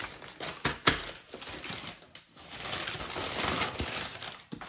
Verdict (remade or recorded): recorded